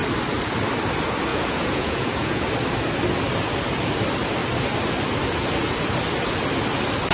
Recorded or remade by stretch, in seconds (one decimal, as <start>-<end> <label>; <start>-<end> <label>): 0.0-1.3 recorded; 1.3-2.4 remade; 2.4-7.1 recorded